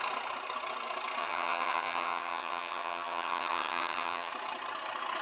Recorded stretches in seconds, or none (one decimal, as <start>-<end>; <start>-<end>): 0.0-1.2; 4.3-5.2